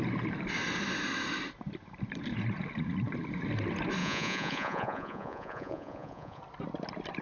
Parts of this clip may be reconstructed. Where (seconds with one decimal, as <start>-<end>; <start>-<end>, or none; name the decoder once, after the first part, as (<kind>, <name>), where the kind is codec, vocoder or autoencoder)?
4.0-6.4 (vocoder, Vocos)